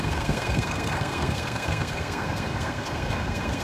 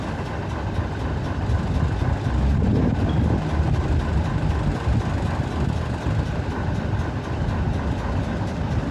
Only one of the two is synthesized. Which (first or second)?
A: first